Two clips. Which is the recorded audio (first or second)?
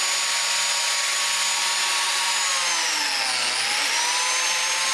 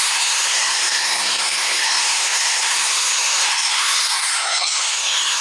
first